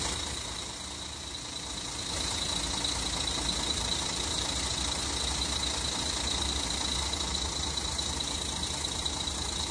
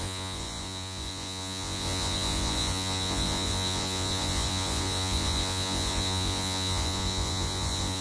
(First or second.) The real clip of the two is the first